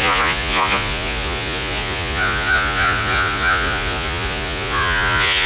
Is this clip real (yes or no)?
no